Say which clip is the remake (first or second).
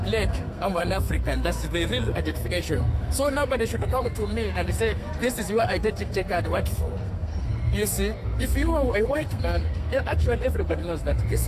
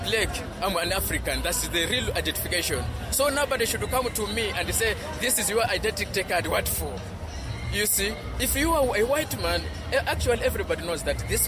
first